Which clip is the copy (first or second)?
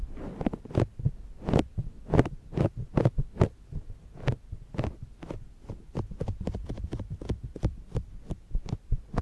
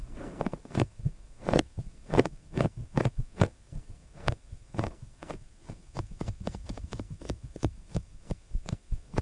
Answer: second